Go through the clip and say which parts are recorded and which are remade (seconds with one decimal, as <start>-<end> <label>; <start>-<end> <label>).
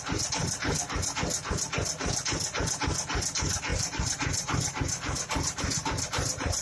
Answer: 0.0-3.7 recorded; 3.7-6.6 remade